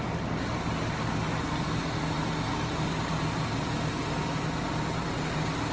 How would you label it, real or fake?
real